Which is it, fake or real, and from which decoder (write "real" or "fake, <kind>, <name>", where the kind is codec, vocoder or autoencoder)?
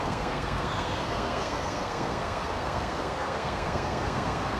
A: fake, codec, SNAC